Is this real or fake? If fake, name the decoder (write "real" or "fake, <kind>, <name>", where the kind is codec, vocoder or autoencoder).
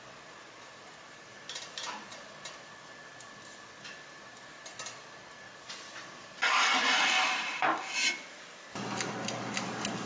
real